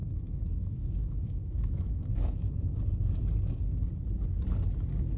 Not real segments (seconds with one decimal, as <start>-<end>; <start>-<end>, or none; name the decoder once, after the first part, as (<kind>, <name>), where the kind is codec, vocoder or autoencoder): 0.0-2.8 (autoencoder, DAC-VAE)